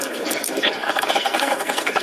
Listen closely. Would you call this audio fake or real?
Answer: fake